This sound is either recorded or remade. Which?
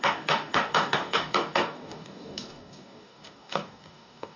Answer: remade